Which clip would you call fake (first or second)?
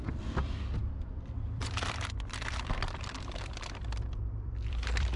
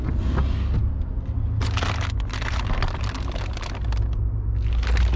first